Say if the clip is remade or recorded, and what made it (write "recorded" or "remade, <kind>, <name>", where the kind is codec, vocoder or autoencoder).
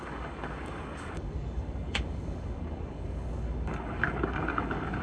remade, codec, DAC